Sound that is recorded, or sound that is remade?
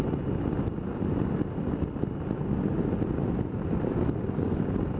recorded